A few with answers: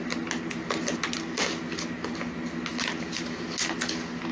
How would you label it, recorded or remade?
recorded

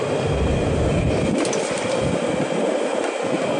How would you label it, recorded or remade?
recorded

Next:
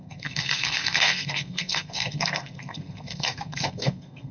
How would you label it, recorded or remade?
remade